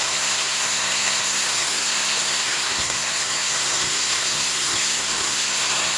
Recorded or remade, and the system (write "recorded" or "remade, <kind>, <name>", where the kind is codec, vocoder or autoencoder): remade, codec, SNAC